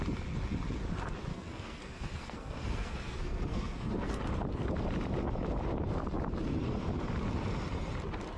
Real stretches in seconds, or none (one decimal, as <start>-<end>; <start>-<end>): 0.0-1.3; 4.2-8.4